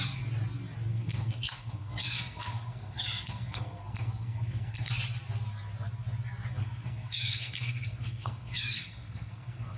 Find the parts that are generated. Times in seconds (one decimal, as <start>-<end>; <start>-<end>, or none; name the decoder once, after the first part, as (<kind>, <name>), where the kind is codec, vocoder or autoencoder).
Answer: 0.9-4.9 (codec, SNAC); 6.6-9.8